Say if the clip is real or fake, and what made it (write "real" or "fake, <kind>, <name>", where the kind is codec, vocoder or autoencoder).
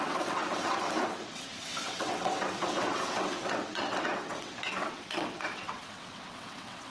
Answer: fake, vocoder, WaveNeXt